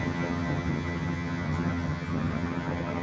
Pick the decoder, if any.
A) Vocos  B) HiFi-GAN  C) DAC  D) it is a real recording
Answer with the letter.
B